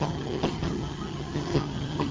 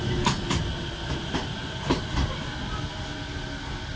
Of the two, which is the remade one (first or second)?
first